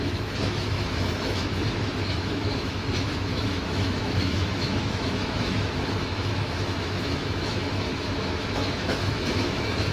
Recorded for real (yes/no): no